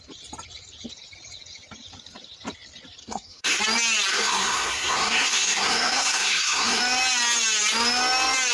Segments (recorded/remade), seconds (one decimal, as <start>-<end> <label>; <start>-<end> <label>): 0.0-3.0 recorded; 3.0-3.6 remade; 3.6-4.1 recorded; 4.1-6.8 remade; 6.8-8.5 recorded